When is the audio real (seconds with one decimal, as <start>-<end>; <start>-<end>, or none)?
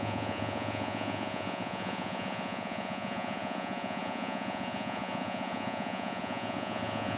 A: none